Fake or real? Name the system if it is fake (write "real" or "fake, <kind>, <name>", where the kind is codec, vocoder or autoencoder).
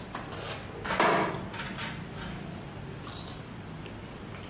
real